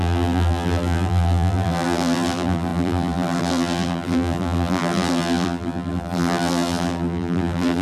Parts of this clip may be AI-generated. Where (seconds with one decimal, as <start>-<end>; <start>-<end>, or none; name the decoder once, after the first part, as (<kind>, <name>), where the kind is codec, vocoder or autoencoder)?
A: 0.0-7.8 (vocoder, BigVGAN v2)